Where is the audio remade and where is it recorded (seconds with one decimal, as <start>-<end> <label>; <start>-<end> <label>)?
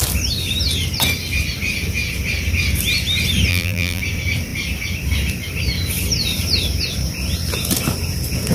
0.0-3.5 recorded; 3.5-4.0 remade; 4.0-8.5 recorded